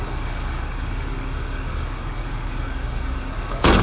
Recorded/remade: remade